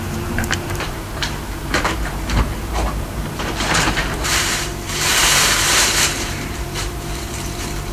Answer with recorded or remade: remade